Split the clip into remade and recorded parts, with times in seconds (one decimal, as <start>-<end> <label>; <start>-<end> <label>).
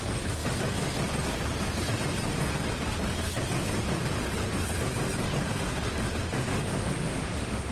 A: 0.0-6.5 recorded; 6.5-7.7 remade